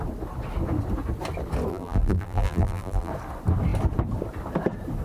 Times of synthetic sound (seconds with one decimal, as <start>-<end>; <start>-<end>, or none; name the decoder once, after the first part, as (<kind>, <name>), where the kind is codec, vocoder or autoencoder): 1.7-3.1 (vocoder, BigVGAN v2)